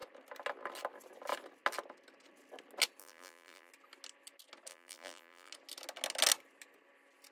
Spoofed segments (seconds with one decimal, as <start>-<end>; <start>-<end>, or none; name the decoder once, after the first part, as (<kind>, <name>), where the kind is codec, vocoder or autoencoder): 3.0-3.7 (vocoder, BigVGAN v2); 4.7-5.5